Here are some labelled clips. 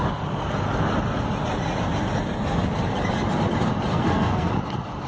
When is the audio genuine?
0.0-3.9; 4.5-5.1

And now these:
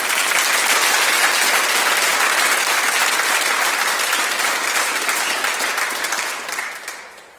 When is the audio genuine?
0.0-7.4